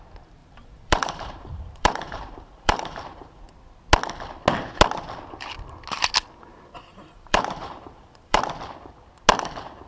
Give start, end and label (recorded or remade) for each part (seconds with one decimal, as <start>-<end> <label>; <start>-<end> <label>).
0.0-0.4 recorded; 0.4-3.4 remade; 3.4-6.5 recorded; 6.5-8.4 remade; 8.4-9.9 recorded